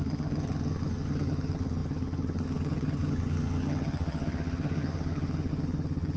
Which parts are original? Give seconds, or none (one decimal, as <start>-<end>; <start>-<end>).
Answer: none